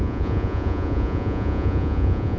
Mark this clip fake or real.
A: fake